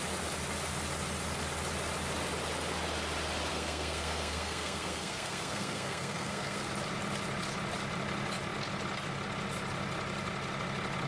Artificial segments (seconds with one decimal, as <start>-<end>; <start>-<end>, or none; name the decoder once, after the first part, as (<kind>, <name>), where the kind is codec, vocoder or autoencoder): 3.5-6.7 (codec, SNAC)